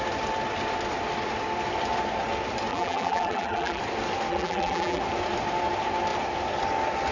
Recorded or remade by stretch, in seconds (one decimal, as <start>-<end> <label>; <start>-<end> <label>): 0.0-2.7 recorded; 2.7-3.8 remade; 3.8-4.3 recorded; 4.3-5.0 remade; 5.0-7.1 recorded